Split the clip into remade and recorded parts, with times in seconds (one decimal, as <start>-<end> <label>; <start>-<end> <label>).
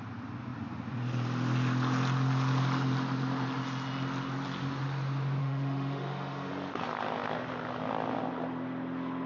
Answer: 0.0-5.4 recorded; 5.4-6.5 remade; 6.5-9.3 recorded